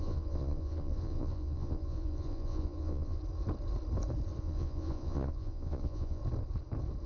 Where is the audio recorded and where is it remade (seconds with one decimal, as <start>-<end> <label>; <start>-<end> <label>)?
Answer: 0.0-3.2 remade; 3.2-4.4 recorded; 4.4-6.2 remade; 6.2-7.1 recorded